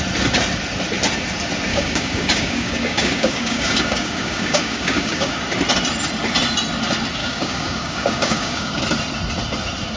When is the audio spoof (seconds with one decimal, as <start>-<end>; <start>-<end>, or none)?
1.7-5.4; 7.2-8.8